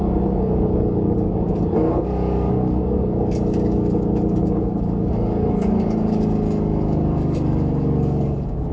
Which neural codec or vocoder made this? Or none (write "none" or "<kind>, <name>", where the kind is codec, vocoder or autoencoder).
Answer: codec, DAC